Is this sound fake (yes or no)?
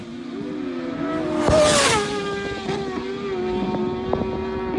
no